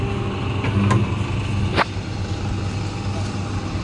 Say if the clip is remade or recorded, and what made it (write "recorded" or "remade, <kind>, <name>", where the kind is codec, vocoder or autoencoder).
recorded